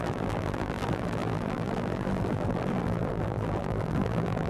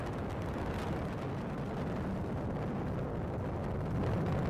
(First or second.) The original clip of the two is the second